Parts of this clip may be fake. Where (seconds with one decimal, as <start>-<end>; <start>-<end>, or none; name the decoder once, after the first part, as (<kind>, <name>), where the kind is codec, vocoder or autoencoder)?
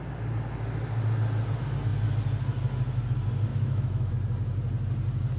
3.5-4.1 (autoencoder, DAC-VAE)